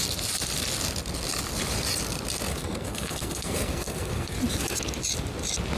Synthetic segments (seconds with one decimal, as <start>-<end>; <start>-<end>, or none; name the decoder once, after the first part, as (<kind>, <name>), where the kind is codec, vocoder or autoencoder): 2.5-4.4 (codec, SNAC)